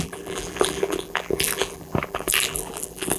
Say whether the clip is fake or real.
fake